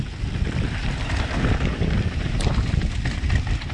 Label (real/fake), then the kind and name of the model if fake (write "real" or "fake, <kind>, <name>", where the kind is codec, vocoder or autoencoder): real